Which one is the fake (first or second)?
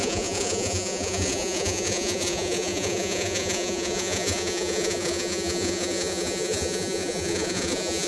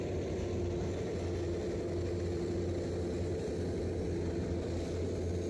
first